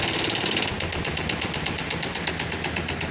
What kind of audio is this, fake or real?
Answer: real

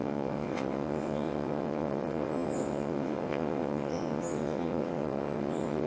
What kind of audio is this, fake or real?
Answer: fake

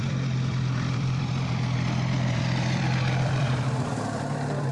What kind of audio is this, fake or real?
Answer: fake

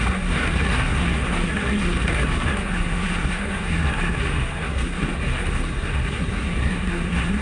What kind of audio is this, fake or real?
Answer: fake